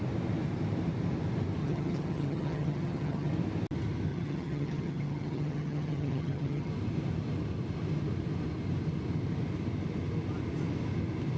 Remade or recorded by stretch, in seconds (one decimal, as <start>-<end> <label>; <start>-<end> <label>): 0.0-1.6 recorded; 1.6-3.3 remade; 3.3-4.1 recorded; 4.1-6.7 remade; 6.7-11.4 recorded

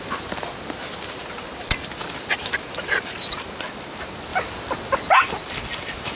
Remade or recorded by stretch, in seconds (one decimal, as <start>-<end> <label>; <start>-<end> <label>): 0.0-6.2 recorded

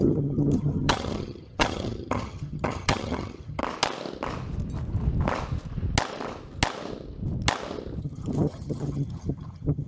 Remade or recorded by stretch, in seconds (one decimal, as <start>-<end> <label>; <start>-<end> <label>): 0.0-3.6 remade; 3.6-8.0 recorded; 8.0-9.9 remade

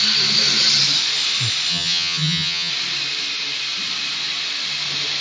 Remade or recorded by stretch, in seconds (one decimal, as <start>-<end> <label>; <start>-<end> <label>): 0.0-1.7 recorded; 1.7-2.7 remade; 2.7-5.2 recorded

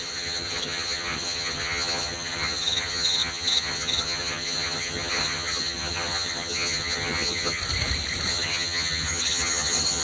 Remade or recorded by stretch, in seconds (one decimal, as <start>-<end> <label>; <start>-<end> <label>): 0.0-7.6 remade; 7.6-8.3 recorded; 8.3-10.0 remade

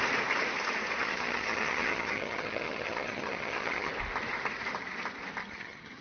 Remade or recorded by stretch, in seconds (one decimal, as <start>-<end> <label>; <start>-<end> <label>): 0.0-1.0 recorded; 1.0-3.9 remade; 3.9-5.4 recorded; 5.4-6.0 remade

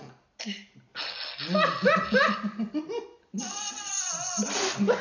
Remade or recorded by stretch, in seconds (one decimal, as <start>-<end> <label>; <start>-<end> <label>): 0.0-5.0 recorded

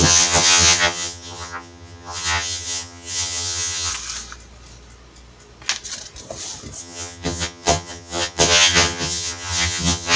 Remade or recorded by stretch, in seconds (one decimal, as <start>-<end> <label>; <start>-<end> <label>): 0.0-3.9 remade; 3.9-6.8 recorded; 6.8-10.2 remade